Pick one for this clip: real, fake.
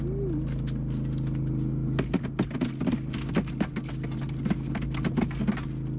real